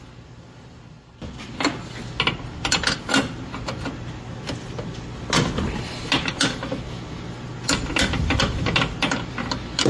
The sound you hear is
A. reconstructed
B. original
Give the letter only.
B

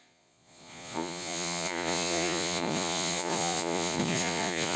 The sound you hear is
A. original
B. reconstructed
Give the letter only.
B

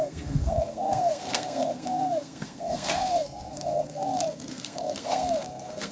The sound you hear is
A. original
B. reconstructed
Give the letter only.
B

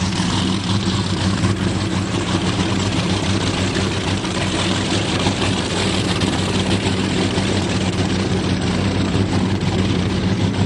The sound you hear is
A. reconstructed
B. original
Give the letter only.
A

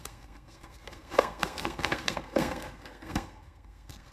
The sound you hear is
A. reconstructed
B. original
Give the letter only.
A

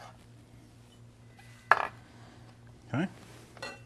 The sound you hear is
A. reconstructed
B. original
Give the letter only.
B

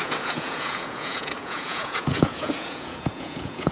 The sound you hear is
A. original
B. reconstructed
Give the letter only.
B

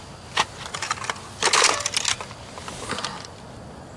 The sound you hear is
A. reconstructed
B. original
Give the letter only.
B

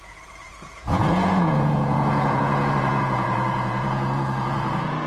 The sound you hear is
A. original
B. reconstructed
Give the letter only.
B